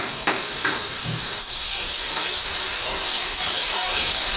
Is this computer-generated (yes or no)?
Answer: yes